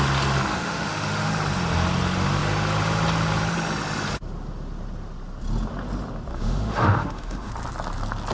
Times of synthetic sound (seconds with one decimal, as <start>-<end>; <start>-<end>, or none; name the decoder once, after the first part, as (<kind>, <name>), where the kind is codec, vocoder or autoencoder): 0.5-1.3 (autoencoder, DAC-VAE); 6.3-7.5